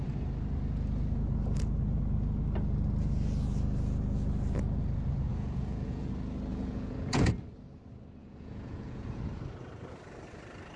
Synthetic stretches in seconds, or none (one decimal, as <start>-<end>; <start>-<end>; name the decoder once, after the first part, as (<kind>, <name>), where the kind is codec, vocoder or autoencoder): 5.3-6.1 (vocoder, Vocos); 6.5-7.3; 8.2-9.2